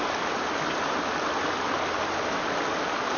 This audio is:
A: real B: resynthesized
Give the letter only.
A